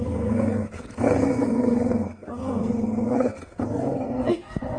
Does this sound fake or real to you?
fake